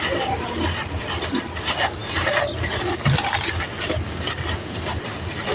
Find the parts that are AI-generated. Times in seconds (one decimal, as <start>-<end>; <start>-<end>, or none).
none